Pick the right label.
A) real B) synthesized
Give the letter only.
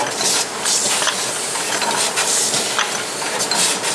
A